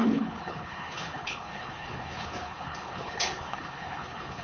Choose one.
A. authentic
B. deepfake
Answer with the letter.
B